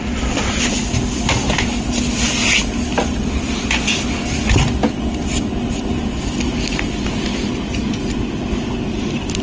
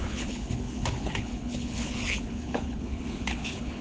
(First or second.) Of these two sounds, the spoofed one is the second